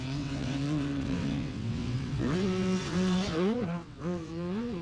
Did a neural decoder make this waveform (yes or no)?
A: yes